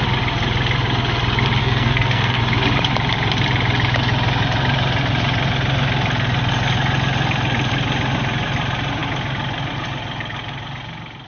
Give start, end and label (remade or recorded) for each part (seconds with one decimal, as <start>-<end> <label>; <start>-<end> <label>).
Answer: 0.0-1.6 recorded; 1.6-2.4 remade; 2.4-11.3 recorded